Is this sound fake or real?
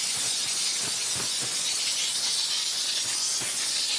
fake